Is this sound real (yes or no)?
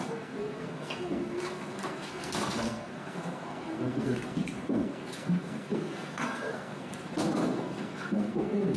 no